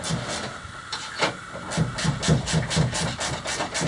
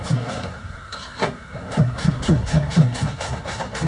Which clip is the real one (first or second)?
first